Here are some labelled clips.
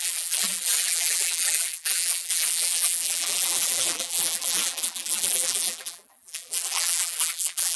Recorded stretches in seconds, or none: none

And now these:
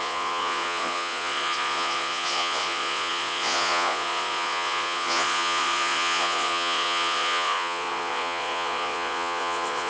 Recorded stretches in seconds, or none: none

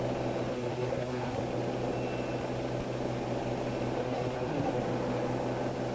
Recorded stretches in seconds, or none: 0.0-0.5; 1.4-4.0; 4.8-5.9

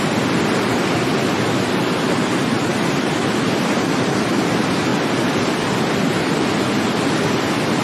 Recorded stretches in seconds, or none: 0.0-7.8

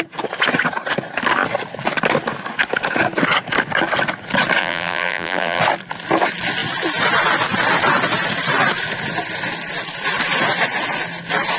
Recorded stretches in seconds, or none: 0.0-4.6; 5.6-11.6